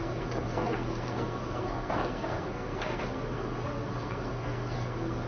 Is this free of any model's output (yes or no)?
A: no